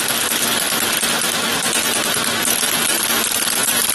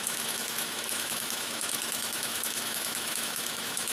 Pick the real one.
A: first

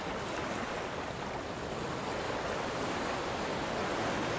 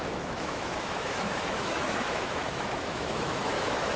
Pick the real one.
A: first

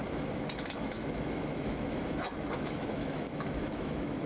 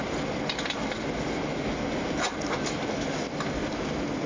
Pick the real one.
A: second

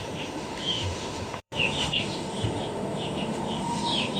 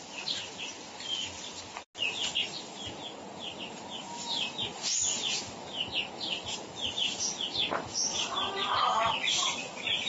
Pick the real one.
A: second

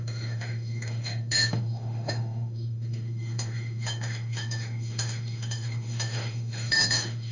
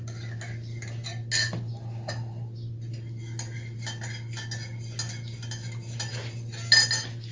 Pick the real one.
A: second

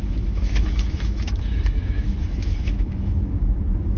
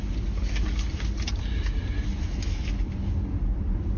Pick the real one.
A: second